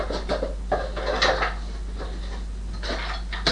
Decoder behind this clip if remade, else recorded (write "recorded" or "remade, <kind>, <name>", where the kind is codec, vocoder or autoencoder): recorded